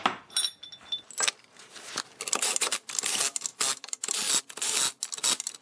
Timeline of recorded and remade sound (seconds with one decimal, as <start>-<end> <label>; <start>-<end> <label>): 0.0-5.6 recorded